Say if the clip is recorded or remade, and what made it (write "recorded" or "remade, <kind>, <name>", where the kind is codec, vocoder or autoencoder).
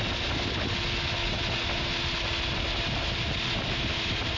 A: recorded